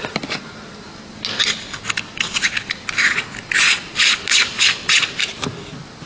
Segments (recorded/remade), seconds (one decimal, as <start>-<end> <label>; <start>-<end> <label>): 0.0-3.9 recorded; 3.9-6.1 remade